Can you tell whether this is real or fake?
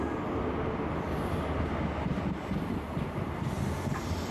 real